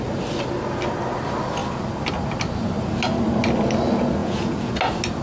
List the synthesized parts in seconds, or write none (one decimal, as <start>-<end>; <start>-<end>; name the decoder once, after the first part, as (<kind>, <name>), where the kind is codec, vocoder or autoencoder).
4.2-4.7 (vocoder, Vocos)